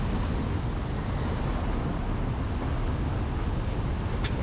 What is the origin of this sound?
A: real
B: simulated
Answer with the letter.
A